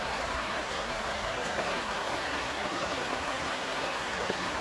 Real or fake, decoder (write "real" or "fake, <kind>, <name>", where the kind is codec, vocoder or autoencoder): fake, codec, SNAC